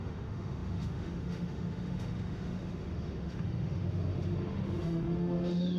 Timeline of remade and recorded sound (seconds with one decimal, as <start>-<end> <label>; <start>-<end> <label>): 0.0-5.8 remade